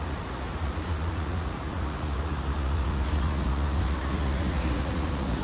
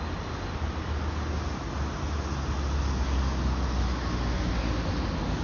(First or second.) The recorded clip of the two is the second